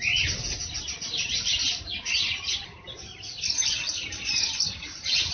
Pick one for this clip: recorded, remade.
recorded